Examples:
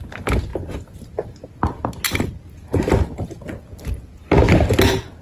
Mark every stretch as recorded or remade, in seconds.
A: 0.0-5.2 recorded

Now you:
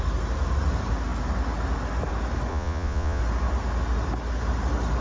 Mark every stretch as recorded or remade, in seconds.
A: 0.0-2.5 recorded; 2.5-3.2 remade; 3.2-5.0 recorded

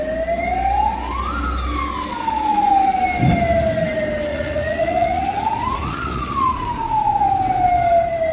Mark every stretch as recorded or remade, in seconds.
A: 0.0-4.3 recorded; 4.3-7.3 remade; 7.3-8.3 recorded

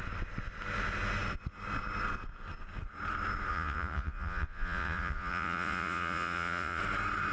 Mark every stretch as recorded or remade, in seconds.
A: 0.0-3.5 recorded; 3.5-6.8 remade; 6.8-7.3 recorded

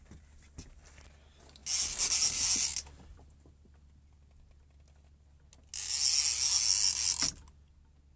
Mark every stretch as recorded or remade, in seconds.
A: 0.0-8.2 recorded

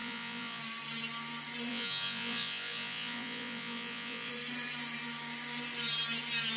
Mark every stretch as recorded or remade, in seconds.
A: 0.0-0.6 remade; 0.6-1.7 recorded; 1.7-4.3 remade; 4.3-6.6 recorded